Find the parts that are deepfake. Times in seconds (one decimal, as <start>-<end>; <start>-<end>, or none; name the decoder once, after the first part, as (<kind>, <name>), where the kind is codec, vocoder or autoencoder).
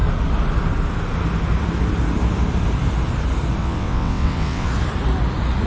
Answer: 3.6-4.7 (vocoder, WaveNeXt)